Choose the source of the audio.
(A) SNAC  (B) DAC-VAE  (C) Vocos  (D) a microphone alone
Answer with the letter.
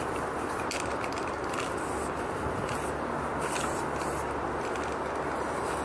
D